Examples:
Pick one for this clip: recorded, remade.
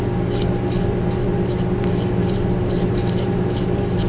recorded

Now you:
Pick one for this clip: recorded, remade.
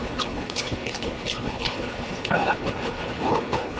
remade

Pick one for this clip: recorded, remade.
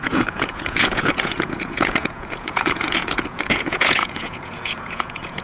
remade